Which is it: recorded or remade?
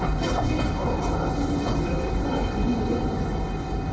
remade